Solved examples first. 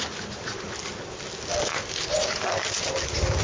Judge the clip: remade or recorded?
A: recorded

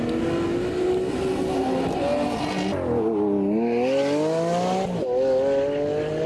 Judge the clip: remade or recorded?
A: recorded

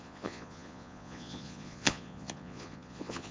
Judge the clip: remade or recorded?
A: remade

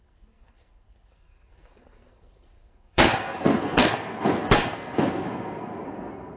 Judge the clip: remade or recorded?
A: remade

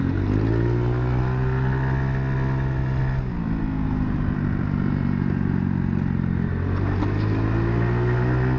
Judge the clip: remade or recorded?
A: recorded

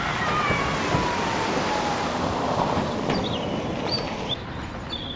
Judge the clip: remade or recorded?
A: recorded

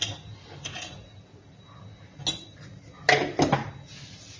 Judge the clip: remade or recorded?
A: recorded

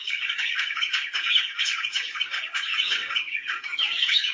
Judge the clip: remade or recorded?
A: remade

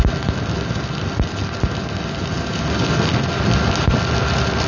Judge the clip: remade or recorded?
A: recorded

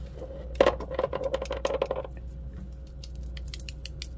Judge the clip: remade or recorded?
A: recorded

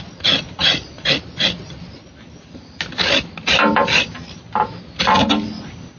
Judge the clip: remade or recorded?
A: recorded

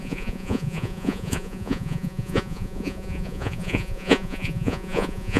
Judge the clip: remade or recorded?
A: remade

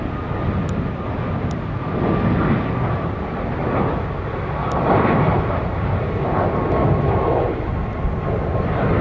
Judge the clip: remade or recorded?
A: recorded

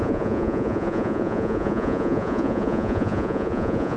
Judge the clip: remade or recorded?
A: remade